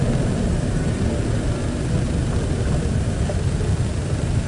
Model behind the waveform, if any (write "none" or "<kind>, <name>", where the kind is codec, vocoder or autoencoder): none